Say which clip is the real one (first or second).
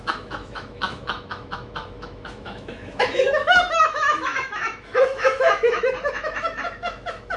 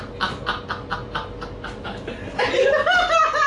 second